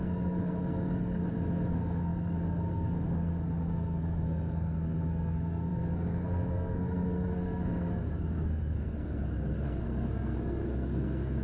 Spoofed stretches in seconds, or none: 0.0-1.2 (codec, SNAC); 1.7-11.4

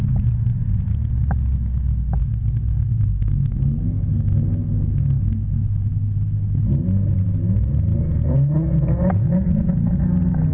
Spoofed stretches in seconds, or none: 2.2-6.6 (codec, SNAC)

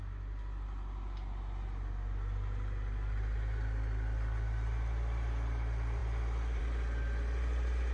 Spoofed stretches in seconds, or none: none